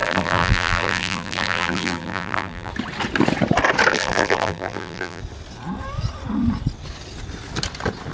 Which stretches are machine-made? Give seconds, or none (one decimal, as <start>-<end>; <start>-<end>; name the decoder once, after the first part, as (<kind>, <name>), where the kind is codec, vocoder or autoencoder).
0.0-2.7 (vocoder, BigVGAN v2); 3.9-5.2